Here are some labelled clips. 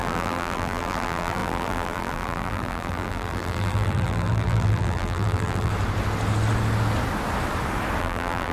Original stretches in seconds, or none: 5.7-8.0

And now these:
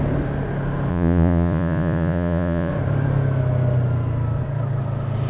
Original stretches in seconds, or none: 0.0-0.9; 2.7-5.3

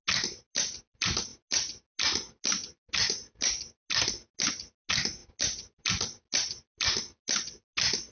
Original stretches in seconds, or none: 0.0-8.1

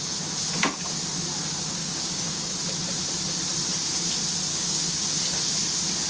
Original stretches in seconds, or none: 0.0-1.8; 2.5-4.5; 5.1-6.1

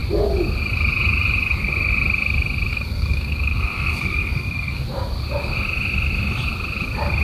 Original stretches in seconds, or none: 0.0-2.7; 4.8-7.2